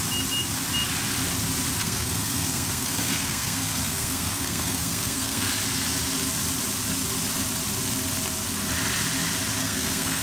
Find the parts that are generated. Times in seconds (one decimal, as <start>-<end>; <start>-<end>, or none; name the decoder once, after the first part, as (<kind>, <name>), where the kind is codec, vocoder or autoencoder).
1.8-5.5 (codec, SNAC); 9.6-10.2